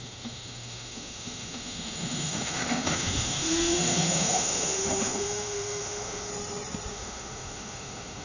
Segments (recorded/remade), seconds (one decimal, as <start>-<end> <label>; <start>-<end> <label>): 0.0-6.3 remade; 6.3-6.9 recorded; 6.9-8.2 remade